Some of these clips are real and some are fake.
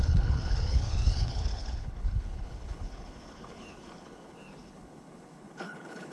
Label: fake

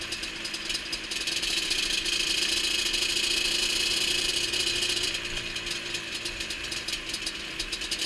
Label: real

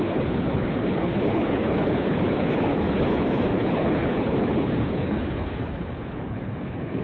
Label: fake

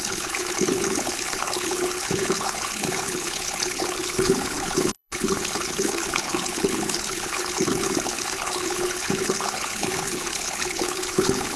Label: fake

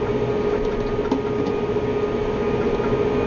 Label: real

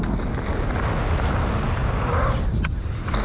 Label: real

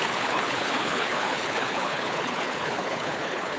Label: fake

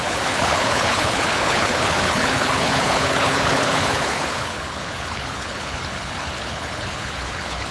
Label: fake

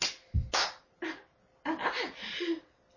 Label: real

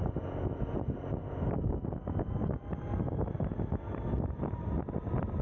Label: real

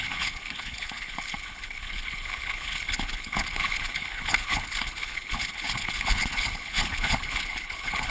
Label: fake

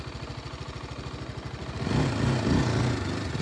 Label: real